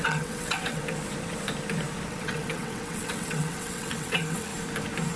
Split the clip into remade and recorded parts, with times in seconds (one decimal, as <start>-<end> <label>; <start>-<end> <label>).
0.0-0.8 remade; 0.8-2.1 recorded; 2.1-4.5 remade; 4.5-5.2 recorded